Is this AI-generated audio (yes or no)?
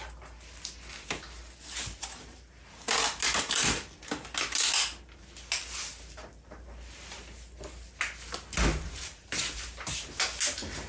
no